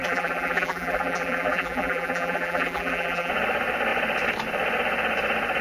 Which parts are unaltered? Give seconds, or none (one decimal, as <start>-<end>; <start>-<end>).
3.3-5.6